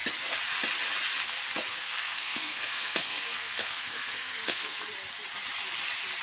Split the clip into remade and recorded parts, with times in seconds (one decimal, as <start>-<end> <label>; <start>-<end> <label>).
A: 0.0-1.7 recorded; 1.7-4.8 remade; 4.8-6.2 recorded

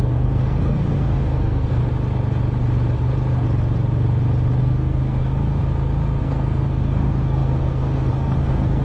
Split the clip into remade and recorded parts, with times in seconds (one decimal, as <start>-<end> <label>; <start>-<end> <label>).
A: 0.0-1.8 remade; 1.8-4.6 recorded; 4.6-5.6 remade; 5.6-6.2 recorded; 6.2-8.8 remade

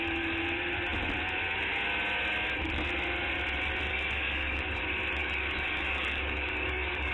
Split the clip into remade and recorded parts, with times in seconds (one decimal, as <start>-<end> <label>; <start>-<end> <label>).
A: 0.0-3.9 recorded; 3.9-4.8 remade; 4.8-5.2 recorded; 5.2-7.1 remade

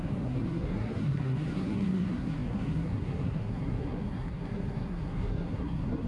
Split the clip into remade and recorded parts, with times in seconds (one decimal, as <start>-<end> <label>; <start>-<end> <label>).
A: 0.0-6.1 remade